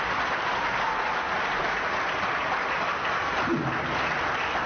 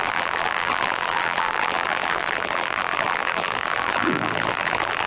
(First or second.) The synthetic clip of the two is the second